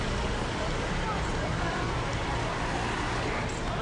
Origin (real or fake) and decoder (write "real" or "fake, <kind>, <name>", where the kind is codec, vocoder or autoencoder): real